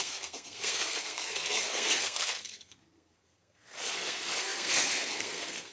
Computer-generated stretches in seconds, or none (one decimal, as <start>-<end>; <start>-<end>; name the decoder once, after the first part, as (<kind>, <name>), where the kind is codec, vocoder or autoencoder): 0.0-5.7 (codec, SNAC)

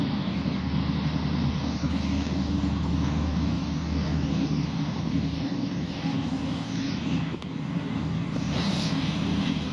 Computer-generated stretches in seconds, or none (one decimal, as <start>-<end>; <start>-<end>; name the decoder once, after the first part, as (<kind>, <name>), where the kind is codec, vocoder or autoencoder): 0.0-0.8 (codec, DAC); 1.5-9.7

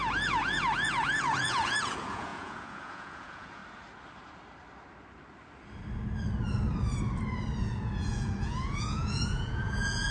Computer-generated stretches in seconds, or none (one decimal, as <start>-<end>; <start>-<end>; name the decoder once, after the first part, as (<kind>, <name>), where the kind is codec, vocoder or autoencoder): 0.0-3.6 (vocoder, Vocos); 7.6-10.1

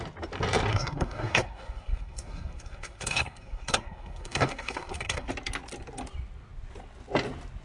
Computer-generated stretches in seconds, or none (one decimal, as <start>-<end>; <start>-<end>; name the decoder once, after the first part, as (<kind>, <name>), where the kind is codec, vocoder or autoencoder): 0.7-5.3 (codec, SNAC)

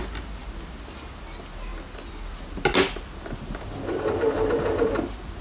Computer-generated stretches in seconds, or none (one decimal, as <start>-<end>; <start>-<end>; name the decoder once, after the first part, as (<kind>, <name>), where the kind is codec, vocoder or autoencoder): none

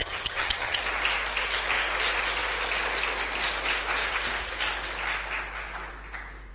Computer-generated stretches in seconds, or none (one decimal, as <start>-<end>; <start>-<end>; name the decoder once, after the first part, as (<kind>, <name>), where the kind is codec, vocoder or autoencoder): 0.0-0.8 (vocoder, HiFi-GAN)

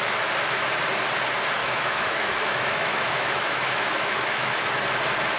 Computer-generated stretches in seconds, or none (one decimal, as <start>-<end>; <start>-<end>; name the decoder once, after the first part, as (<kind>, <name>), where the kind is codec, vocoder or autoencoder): 1.6-4.7 (autoencoder, DAC-VAE)